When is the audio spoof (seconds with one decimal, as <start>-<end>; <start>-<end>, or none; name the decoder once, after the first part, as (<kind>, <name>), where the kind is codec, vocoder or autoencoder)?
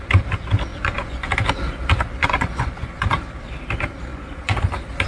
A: 0.7-1.3 (vocoder, Vocos); 2.2-3.4; 4.1-4.6